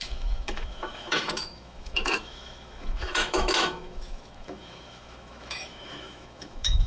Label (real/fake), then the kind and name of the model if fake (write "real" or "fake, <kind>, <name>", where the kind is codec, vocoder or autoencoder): fake, autoencoder, DAC-VAE